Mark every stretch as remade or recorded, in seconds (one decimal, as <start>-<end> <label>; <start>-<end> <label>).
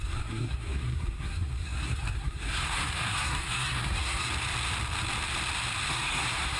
0.0-4.3 remade; 4.3-5.9 recorded; 5.9-6.6 remade